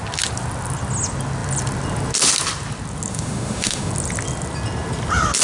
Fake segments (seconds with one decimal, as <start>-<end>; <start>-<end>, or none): 3.1-3.9